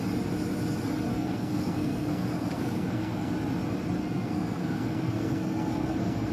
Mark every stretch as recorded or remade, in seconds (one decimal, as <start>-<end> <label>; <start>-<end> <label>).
0.0-1.1 recorded; 1.1-3.3 remade; 3.3-4.0 recorded; 4.0-6.3 remade